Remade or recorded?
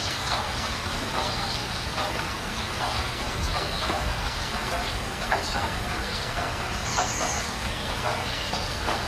remade